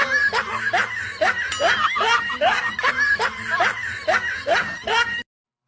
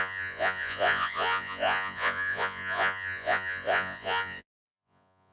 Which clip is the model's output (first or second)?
second